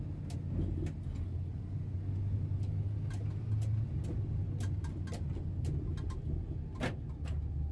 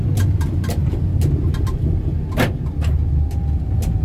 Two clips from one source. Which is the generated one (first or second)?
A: second